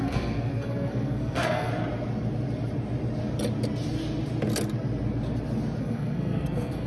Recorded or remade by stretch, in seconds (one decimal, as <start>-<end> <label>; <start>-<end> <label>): 0.0-1.7 remade; 1.7-5.8 recorded; 5.8-6.9 remade